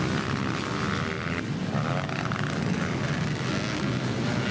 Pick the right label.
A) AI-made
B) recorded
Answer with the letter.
B